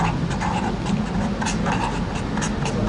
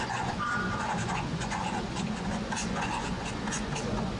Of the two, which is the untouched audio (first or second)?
first